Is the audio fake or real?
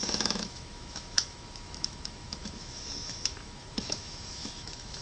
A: fake